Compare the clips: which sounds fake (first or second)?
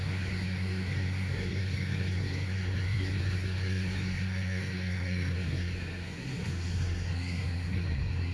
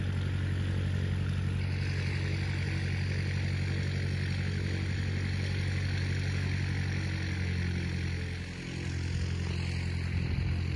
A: first